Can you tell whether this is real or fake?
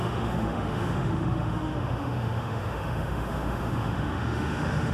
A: fake